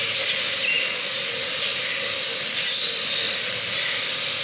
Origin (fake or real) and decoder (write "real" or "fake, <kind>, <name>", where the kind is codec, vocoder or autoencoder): real